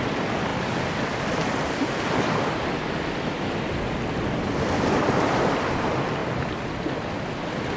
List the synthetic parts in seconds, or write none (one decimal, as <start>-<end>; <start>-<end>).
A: 0.5-3.3